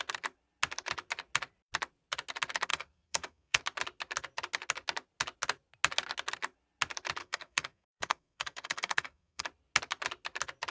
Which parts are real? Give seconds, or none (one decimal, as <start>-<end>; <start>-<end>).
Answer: 0.0-2.7; 3.6-7.2; 9.4-10.7